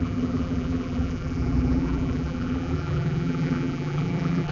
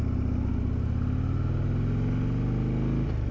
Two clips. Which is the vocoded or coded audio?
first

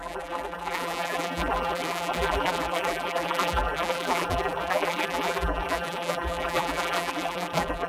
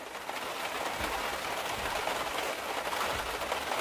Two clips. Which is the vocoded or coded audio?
first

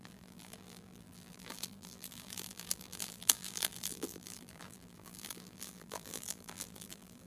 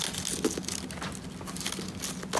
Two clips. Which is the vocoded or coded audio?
first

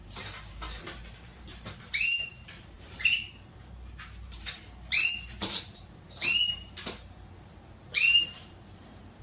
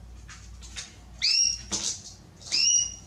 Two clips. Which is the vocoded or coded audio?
first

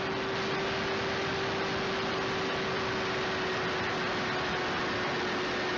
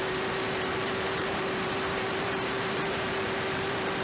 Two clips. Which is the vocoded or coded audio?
second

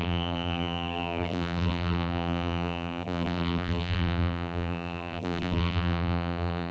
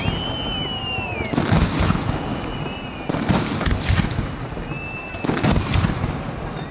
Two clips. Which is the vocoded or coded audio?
first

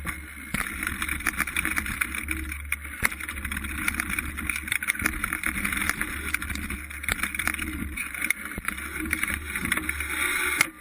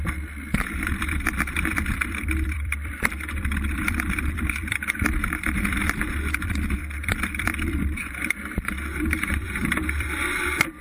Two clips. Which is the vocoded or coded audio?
second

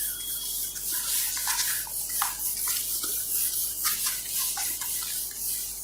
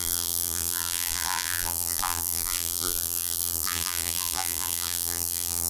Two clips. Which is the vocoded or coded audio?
second